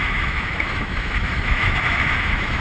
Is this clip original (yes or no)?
no